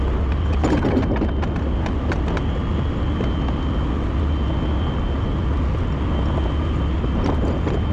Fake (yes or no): no